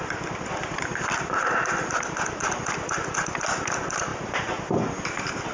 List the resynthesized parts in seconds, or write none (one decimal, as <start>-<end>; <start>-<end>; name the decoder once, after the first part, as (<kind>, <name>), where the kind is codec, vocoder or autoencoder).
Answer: none